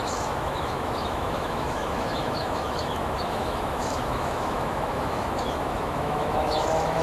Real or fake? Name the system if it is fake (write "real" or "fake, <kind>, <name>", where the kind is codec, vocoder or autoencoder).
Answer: fake, autoencoder, DAC-VAE